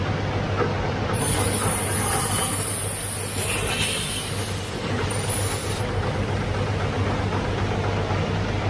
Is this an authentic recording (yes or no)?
yes